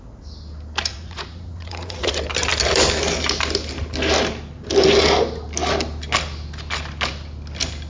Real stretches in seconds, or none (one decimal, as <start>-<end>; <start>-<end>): 0.0-0.9; 2.1-7.9